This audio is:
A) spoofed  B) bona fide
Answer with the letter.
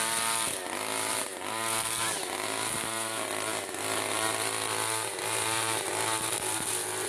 B